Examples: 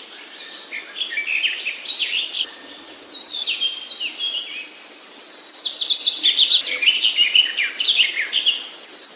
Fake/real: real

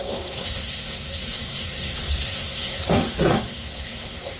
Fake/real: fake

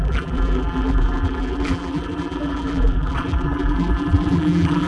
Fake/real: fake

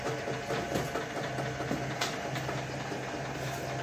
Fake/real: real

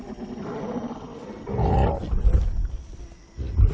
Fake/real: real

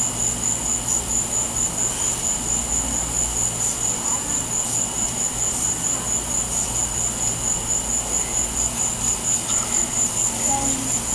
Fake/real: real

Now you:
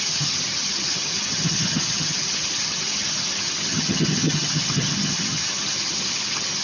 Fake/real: fake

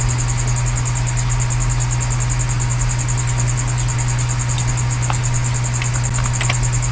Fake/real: real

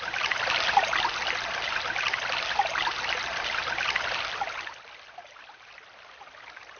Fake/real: real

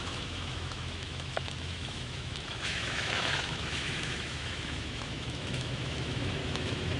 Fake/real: fake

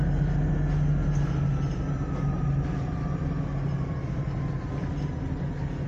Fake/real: real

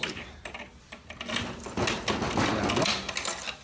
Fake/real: real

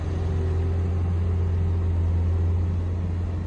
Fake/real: real